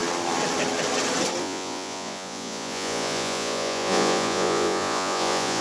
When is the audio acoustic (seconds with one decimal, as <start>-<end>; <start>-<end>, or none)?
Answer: 0.0-1.4

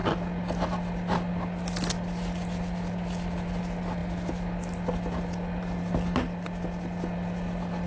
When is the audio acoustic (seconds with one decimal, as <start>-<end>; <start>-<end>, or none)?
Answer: 0.0-7.9

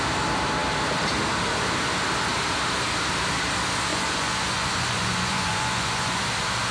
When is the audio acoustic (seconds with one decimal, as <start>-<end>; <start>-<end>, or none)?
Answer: 0.0-3.9; 6.2-6.7

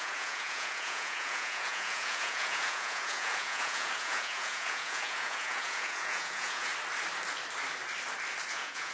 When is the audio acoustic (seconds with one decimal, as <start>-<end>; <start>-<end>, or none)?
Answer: 6.7-8.5

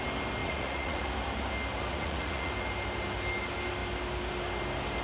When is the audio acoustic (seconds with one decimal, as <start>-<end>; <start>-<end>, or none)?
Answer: 0.0-0.4; 1.0-1.9; 2.5-5.0

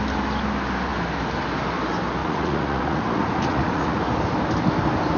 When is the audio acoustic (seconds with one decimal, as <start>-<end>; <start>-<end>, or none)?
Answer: 0.0-2.2; 4.0-5.2

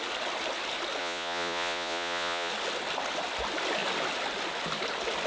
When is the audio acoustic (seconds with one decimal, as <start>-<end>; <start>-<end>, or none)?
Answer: 0.0-1.0; 2.5-5.3